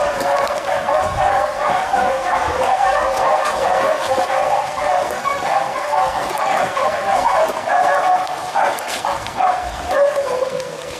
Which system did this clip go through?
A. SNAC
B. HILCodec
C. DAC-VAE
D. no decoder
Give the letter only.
A